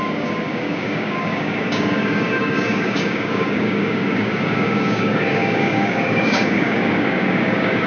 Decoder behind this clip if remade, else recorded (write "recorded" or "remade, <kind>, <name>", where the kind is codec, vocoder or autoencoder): remade, codec, DAC